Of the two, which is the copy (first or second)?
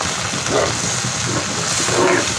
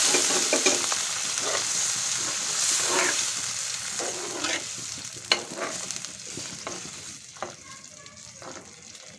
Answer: second